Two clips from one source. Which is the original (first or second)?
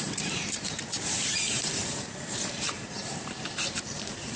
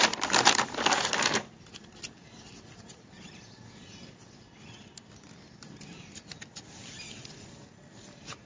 second